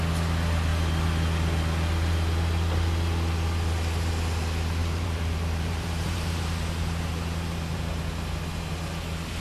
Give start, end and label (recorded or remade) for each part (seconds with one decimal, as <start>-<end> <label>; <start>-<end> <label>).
0.0-4.8 recorded; 4.8-8.0 remade; 8.0-9.4 recorded